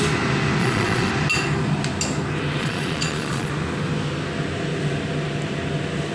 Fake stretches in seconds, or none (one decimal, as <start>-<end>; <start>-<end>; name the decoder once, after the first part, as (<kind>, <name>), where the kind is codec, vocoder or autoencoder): 0.6-1.1 (vocoder, Vocos); 2.6-3.5